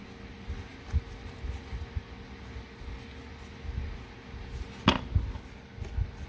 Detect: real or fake real